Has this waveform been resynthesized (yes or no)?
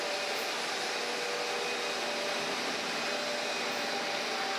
no